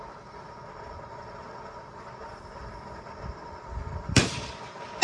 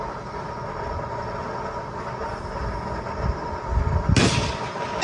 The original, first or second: second